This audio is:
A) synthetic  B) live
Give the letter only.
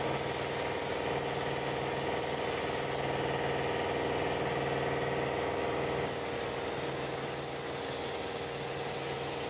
B